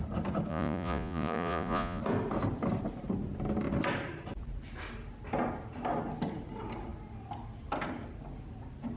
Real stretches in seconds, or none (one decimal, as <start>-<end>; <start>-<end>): 0.0-0.5; 2.0-9.0